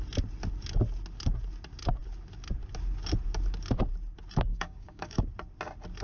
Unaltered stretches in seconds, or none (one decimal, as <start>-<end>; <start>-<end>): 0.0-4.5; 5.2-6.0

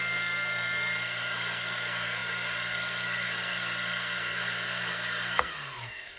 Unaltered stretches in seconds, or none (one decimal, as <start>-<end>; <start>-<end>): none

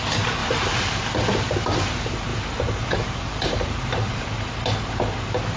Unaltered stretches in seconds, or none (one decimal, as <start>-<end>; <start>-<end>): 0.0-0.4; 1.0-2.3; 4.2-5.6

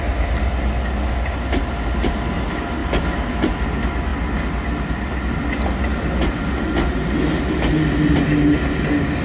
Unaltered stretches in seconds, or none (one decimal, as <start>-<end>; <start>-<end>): 0.0-9.2